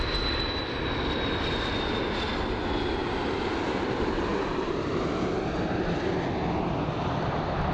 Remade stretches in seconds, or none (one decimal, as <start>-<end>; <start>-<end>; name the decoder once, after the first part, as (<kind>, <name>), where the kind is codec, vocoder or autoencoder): none